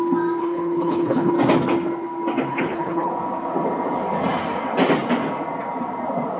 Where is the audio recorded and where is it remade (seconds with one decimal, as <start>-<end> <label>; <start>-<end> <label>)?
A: 0.0-0.4 recorded; 0.4-1.3 remade; 1.3-2.5 recorded; 2.5-3.1 remade; 3.1-6.4 recorded